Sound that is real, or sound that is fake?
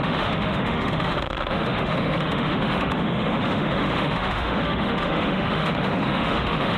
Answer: fake